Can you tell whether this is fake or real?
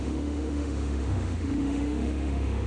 fake